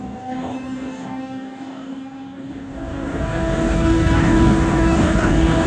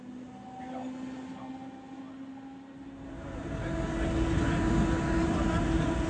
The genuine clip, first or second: second